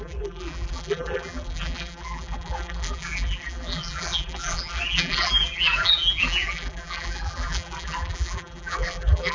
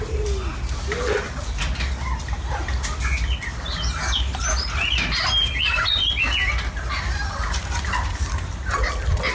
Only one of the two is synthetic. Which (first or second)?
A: first